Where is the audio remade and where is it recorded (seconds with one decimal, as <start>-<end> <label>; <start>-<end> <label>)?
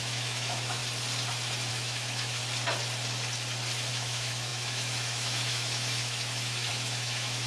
0.0-0.8 remade; 0.8-1.7 recorded; 1.7-2.4 remade; 2.4-3.9 recorded; 3.9-7.5 remade